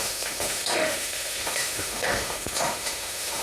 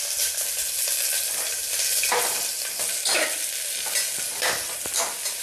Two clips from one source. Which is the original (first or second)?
second